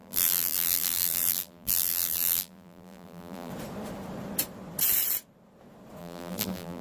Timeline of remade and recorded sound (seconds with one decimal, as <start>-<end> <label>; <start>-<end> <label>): 0.0-3.5 remade; 3.5-6.0 recorded; 6.0-6.8 remade